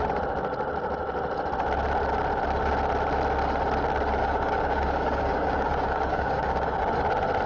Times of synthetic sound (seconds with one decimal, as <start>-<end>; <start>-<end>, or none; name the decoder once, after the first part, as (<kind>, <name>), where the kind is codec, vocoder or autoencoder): 4.2-6.8 (codec, DAC)